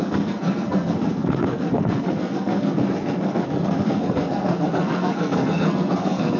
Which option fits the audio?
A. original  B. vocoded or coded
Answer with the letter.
B